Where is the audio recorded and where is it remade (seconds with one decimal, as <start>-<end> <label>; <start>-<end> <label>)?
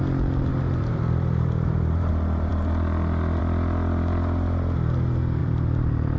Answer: 0.0-0.5 recorded; 0.5-2.1 remade; 2.1-5.4 recorded; 5.4-6.2 remade